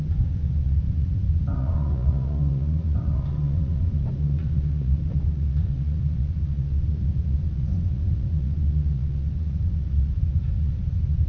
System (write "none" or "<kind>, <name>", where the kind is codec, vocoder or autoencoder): vocoder, Vocos